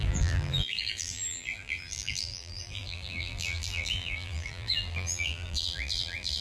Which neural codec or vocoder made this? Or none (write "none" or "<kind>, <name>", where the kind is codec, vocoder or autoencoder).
vocoder, BigVGAN v2